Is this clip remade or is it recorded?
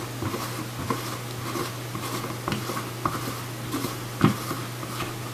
recorded